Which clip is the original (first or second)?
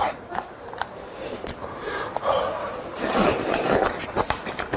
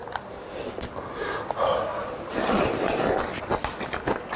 second